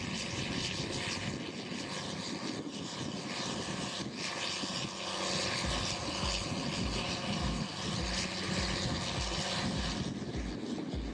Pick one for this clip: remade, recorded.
recorded